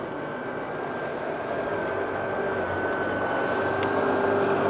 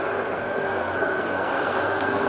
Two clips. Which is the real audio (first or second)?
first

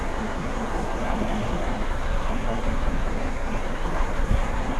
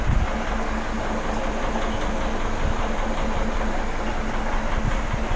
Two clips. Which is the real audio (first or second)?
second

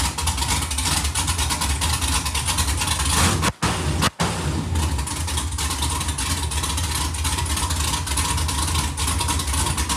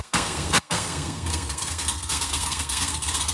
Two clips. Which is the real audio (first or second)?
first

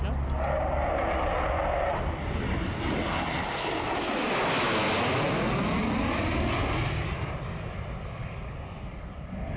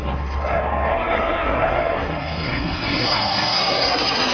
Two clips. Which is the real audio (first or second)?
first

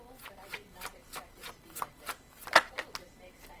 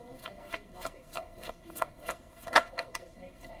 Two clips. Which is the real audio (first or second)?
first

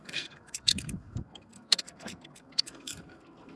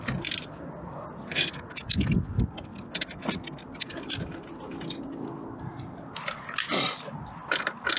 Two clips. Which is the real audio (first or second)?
second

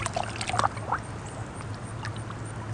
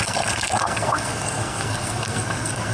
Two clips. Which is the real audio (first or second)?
first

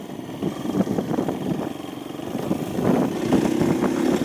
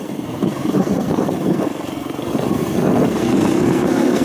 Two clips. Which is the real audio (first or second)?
first